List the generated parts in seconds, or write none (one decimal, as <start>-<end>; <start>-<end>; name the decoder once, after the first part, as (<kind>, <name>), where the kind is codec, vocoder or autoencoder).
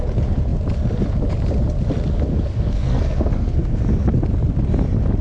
2.3-3.8 (codec, SNAC)